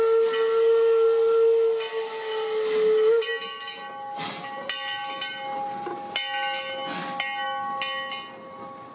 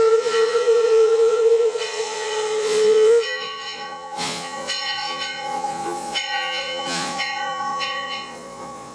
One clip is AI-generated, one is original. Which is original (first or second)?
first